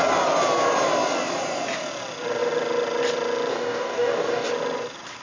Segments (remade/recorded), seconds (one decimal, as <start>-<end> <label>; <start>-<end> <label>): 0.0-3.5 recorded; 3.5-4.5 remade; 4.5-5.2 recorded